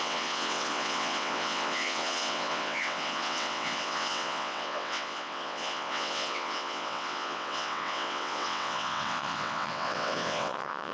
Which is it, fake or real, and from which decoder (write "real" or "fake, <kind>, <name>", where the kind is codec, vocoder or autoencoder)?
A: fake, vocoder, WaveNeXt